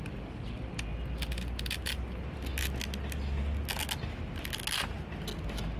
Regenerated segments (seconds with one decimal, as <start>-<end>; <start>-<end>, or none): none